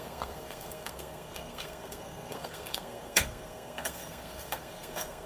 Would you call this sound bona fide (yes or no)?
no